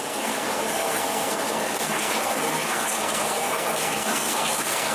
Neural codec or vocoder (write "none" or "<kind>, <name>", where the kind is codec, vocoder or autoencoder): codec, SNAC